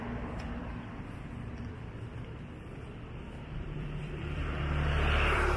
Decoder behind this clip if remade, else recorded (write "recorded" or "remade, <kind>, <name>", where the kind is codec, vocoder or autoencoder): remade, vocoder, BigVGAN v2